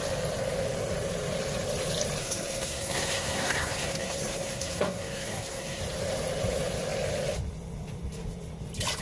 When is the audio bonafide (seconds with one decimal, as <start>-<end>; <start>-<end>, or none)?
0.0-2.2; 5.8-9.0